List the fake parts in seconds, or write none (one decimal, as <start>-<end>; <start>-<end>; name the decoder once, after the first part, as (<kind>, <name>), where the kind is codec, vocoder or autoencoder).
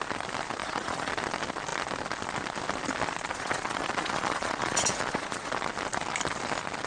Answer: 0.6-1.1 (vocoder, Vocos); 3.3-5.5